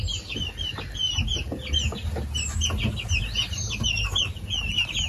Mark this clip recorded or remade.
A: recorded